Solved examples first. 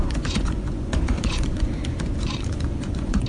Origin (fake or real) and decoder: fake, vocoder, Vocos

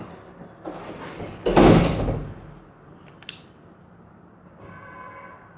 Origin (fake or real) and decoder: real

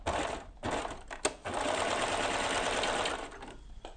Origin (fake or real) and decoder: real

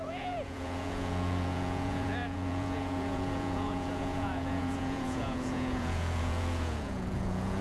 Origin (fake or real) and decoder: fake, vocoder, Vocos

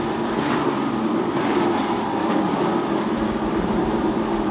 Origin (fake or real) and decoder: fake, vocoder, BigVGAN v2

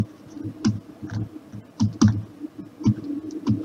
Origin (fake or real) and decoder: real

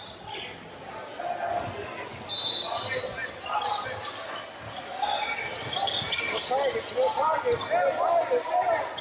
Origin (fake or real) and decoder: real